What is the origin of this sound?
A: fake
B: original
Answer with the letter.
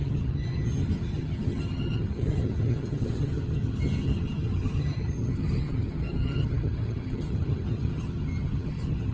A